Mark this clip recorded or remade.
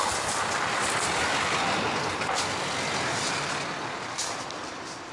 recorded